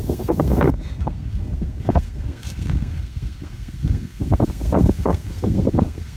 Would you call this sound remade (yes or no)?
yes